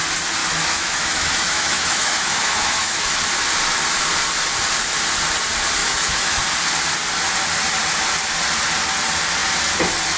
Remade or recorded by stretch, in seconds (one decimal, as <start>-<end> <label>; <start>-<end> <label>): 0.0-0.4 recorded; 0.4-3.2 remade; 3.2-5.8 recorded; 5.8-6.4 remade; 6.4-10.2 recorded